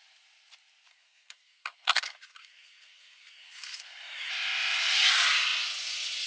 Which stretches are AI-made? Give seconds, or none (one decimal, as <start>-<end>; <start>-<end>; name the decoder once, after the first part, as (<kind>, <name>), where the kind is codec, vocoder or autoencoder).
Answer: 0.9-4.3 (codec, SNAC)